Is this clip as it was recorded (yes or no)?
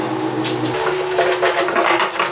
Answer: yes